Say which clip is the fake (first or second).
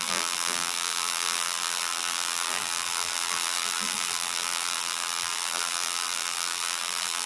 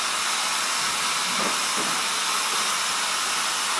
first